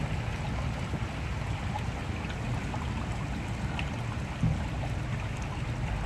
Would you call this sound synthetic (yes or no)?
no